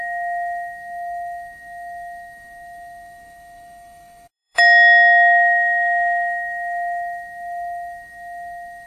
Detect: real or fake fake